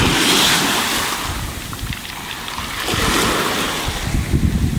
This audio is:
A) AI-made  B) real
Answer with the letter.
B